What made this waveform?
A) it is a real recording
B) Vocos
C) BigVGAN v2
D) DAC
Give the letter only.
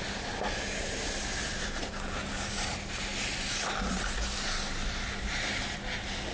A